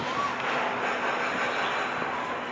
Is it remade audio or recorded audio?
recorded